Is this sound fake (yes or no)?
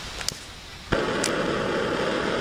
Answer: no